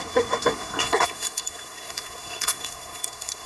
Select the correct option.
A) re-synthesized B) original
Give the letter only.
A